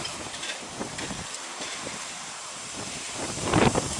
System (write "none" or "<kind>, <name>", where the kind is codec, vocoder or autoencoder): vocoder, BigVGAN v2